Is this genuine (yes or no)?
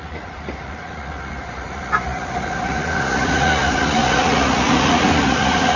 no